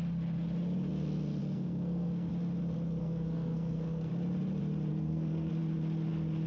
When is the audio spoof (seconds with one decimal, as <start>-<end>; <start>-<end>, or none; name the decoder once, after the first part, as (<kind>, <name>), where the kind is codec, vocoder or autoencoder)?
1.4-2.3 (codec, SNAC); 3.0-4.1; 4.9-5.5